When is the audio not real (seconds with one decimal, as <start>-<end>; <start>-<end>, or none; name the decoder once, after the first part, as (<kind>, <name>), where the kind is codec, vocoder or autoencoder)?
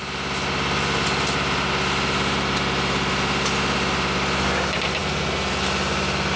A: none